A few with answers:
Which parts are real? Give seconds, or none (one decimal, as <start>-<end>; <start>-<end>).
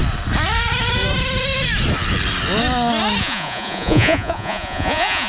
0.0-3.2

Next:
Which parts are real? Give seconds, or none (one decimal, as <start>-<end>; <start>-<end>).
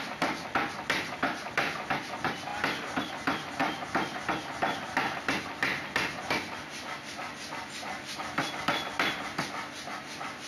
0.0-10.5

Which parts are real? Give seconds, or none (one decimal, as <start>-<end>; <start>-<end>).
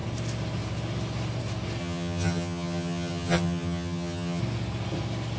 0.0-1.8; 4.4-5.4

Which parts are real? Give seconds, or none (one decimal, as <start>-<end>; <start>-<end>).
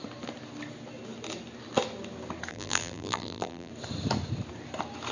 0.0-2.5; 3.7-5.1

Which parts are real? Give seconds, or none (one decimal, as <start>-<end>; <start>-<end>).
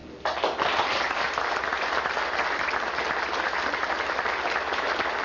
0.0-5.2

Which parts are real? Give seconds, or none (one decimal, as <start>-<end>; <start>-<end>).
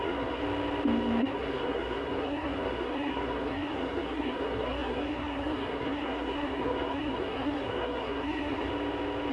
0.4-1.2; 8.7-9.3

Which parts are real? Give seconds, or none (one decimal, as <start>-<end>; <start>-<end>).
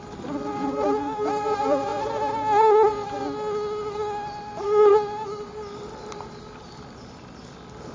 0.0-7.9